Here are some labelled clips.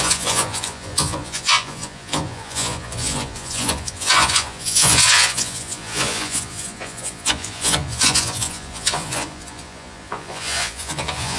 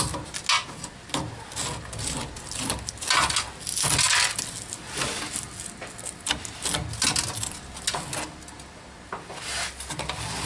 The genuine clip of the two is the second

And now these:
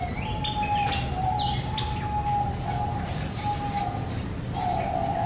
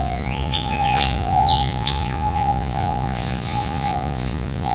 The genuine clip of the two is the first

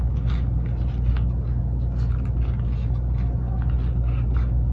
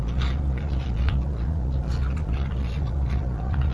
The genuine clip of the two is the first